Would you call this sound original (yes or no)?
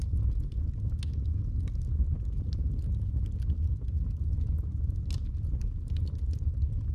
yes